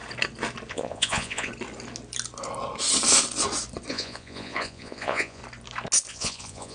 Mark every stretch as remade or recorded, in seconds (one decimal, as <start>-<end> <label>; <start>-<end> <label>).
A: 0.0-0.7 recorded; 0.7-1.5 remade; 1.5-3.9 recorded; 3.9-5.4 remade; 5.4-6.1 recorded; 6.1-6.7 remade